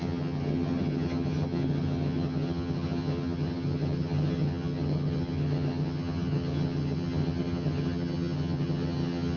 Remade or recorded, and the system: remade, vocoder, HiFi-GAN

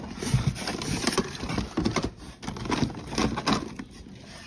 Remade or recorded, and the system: recorded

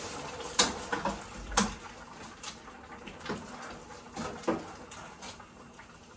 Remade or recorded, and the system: recorded